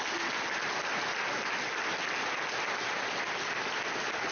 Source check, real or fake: real